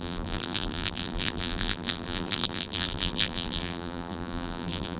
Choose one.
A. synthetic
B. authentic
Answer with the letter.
A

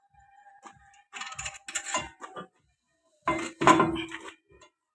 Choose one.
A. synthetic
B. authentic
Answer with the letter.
B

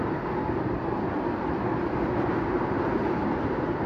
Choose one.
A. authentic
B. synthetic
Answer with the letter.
A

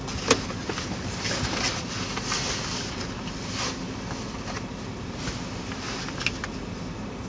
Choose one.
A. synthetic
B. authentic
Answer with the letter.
B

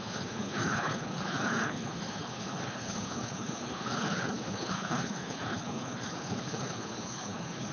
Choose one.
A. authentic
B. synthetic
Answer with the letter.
B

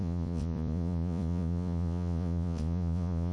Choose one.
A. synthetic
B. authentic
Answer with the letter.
A